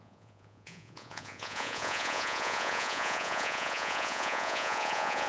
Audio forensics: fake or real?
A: fake